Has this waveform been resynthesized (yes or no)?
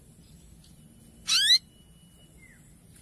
no